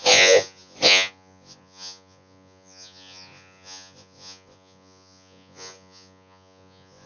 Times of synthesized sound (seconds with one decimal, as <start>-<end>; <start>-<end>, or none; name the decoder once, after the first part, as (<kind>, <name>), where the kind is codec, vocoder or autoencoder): 0.0-7.1 (vocoder, Vocos)